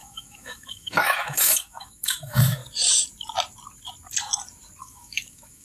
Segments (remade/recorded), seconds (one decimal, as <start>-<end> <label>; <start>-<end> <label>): 0.0-2.6 remade; 2.6-4.8 recorded; 4.8-5.6 remade